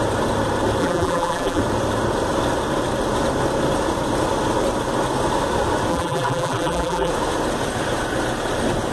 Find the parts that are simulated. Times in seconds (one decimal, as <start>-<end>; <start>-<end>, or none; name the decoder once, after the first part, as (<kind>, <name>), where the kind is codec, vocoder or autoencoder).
0.8-1.6 (vocoder, BigVGAN v2); 5.9-7.1